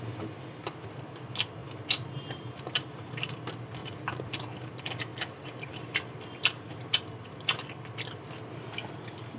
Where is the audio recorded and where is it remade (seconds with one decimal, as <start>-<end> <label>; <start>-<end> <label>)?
0.0-1.6 recorded; 1.6-3.4 remade; 3.4-3.8 recorded; 3.8-4.3 remade; 4.3-5.1 recorded; 5.1-6.0 remade; 6.0-9.4 recorded